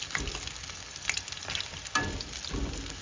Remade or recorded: recorded